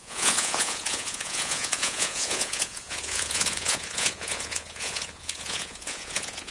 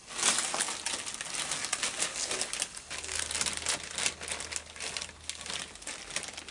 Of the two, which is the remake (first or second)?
first